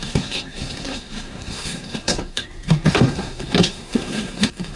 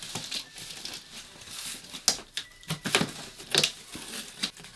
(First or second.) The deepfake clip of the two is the first